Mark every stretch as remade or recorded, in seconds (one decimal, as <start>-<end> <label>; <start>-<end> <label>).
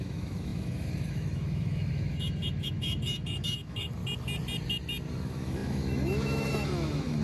0.0-4.0 remade; 4.0-5.1 recorded; 5.1-7.2 remade